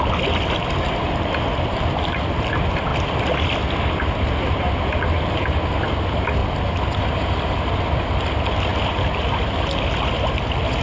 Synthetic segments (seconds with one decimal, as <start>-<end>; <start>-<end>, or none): none